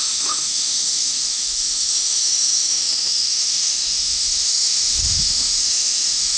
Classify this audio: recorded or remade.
remade